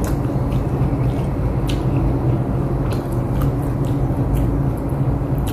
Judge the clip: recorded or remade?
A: recorded